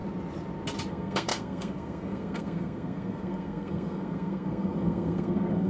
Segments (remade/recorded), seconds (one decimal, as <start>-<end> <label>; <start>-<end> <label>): 0.0-0.9 recorded; 0.9-5.7 remade